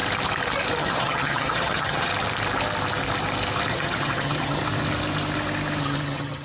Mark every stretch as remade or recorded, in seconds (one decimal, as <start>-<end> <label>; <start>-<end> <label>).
0.0-0.8 recorded; 0.8-2.1 remade; 2.1-3.7 recorded; 3.7-4.6 remade; 4.6-5.8 recorded; 5.8-6.4 remade